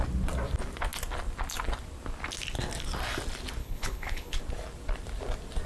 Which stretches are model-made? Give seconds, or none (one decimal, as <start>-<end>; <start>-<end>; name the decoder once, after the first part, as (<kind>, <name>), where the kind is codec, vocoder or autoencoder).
3.6-4.4 (codec, HILCodec)